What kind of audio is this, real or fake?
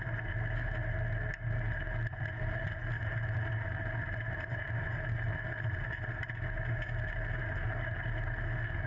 real